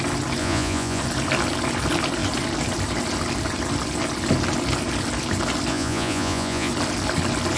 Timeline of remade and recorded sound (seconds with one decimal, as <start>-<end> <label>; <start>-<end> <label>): 0.0-0.4 recorded; 0.4-1.0 remade; 1.0-5.7 recorded; 5.7-6.7 remade; 6.7-7.6 recorded